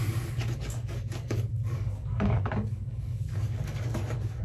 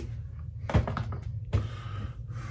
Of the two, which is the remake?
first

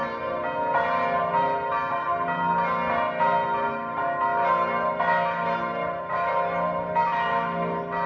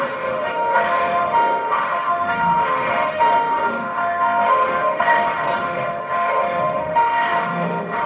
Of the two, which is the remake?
second